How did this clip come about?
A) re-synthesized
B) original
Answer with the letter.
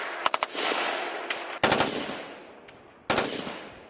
B